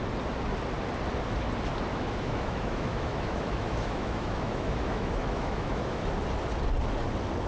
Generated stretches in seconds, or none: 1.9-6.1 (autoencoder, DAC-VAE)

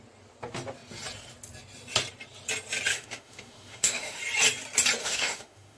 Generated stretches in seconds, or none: 2.9-4.2 (autoencoder, DAC-VAE); 5.0-5.8

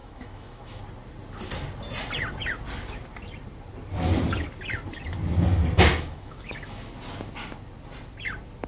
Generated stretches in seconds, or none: 0.0-0.8 (autoencoder, DAC-VAE); 5.9-6.9

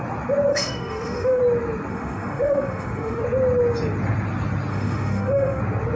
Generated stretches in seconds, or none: 0.5-1.4 (autoencoder, DAC-VAE); 1.9-3.2; 4.7-5.6